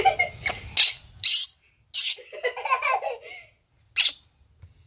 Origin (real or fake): real